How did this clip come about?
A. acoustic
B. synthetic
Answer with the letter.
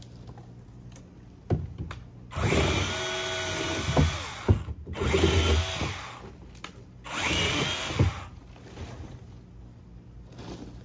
A